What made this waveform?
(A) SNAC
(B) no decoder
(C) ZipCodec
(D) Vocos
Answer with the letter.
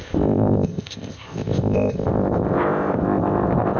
C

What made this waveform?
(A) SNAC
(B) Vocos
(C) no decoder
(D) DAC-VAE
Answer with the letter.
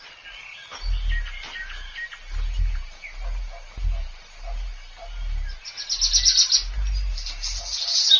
C